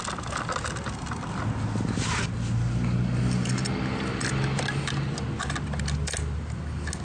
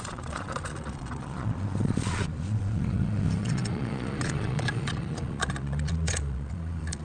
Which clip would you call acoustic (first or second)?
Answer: first